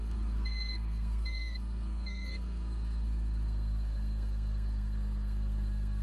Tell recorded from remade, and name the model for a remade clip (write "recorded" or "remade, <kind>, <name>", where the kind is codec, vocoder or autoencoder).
remade, codec, SNAC